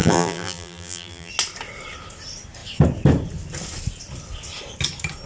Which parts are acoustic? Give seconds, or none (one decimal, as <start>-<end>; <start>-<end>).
1.3-5.3